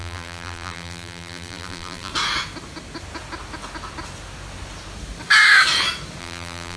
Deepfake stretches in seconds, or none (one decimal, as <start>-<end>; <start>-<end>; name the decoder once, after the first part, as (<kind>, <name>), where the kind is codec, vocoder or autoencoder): 0.0-2.1 (vocoder, BigVGAN v2); 6.2-6.8